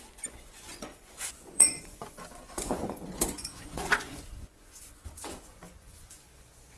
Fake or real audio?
fake